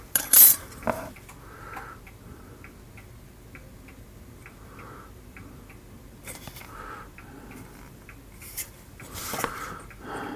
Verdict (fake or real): real